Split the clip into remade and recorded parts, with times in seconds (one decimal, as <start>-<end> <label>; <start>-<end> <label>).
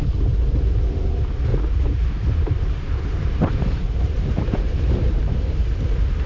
0.0-1.5 recorded; 1.5-5.3 remade; 5.3-6.3 recorded